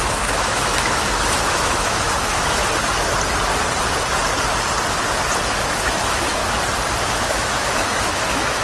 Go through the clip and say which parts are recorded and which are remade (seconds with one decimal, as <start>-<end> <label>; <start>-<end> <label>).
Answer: 0.0-2.6 remade; 2.6-5.6 recorded; 5.6-6.4 remade; 6.4-6.9 recorded; 6.9-8.6 remade